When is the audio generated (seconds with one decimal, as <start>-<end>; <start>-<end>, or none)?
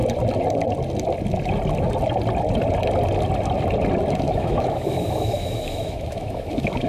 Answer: 4.1-6.9